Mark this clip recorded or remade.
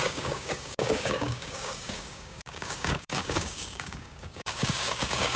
remade